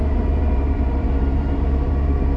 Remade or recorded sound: remade